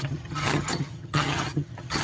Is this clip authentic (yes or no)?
no